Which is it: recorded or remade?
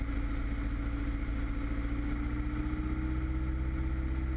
recorded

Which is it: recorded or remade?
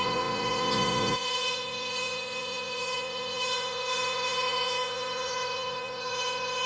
remade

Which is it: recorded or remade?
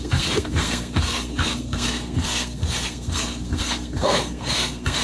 remade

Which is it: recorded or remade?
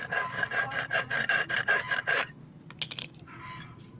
recorded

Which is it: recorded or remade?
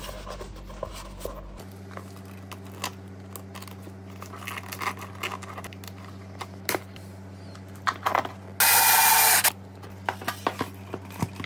recorded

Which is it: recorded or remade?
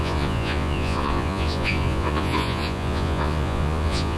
remade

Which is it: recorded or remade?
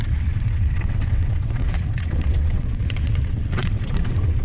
remade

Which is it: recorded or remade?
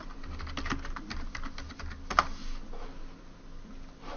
recorded